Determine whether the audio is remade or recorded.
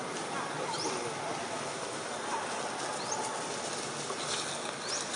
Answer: recorded